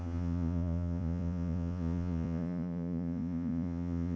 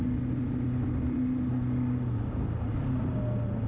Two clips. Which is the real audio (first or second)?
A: second